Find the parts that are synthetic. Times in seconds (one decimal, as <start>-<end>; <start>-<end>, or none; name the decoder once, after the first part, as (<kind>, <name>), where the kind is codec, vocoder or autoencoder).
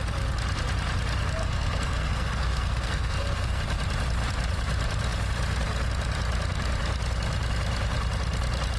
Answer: 1.4-3.6 (codec, SNAC)